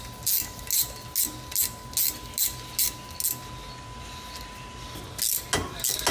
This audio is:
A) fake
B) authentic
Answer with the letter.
B